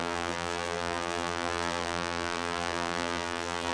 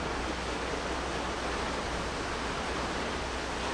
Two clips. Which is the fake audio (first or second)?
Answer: first